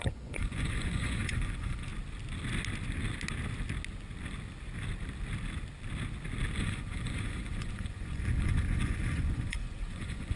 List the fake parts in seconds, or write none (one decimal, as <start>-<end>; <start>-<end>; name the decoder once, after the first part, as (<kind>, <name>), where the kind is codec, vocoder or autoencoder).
0.0-1.9 (vocoder, Vocos); 6.6-10.4